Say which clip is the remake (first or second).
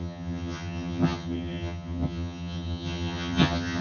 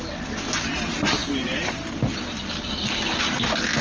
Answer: first